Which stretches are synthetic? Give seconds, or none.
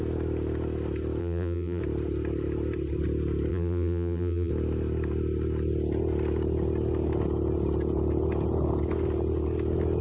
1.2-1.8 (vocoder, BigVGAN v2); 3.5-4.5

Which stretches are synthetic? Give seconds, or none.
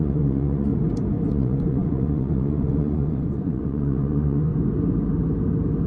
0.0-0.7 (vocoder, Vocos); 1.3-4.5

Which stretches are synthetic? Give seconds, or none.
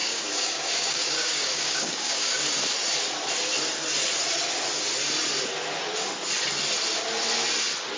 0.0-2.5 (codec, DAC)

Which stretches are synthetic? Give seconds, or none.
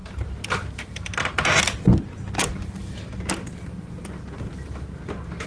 none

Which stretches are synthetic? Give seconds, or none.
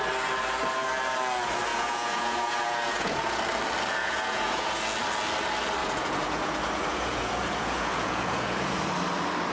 1.7-3.4 (vocoder, Vocos); 4.0-4.8; 5.8-8.9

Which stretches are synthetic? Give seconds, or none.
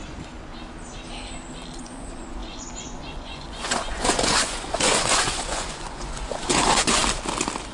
0.0-0.5 (vocoder, Vocos); 1.8-7.0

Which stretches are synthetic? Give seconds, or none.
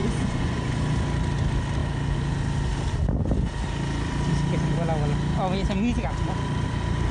0.0-0.7 (vocoder, Vocos)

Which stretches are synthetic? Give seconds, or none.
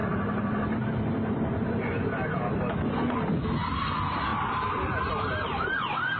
0.0-3.2 (vocoder, BigVGAN v2); 4.3-5.1